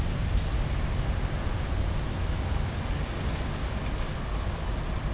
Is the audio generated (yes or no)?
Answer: no